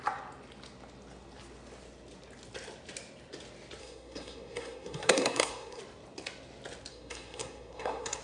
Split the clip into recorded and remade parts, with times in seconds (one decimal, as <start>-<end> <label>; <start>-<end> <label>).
0.0-3.8 recorded; 3.8-5.8 remade; 5.8-6.9 recorded; 6.9-8.2 remade